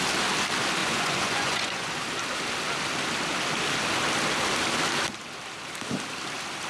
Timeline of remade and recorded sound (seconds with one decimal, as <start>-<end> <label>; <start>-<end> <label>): 0.0-0.8 recorded; 0.8-1.9 remade; 1.9-6.7 recorded